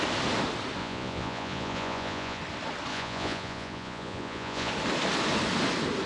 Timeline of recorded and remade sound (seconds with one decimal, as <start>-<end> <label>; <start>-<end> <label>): 0.0-0.8 recorded; 0.8-2.4 remade; 2.4-2.9 recorded; 2.9-4.7 remade; 4.7-6.1 recorded